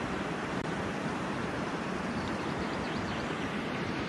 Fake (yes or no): yes